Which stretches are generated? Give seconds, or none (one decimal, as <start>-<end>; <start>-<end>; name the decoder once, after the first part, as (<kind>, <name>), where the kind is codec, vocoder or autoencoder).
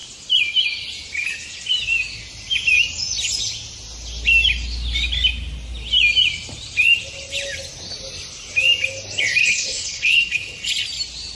9.4-10.7 (codec, HILCodec)